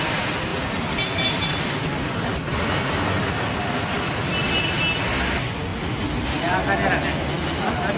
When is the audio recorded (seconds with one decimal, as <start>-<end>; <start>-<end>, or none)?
0.0-8.0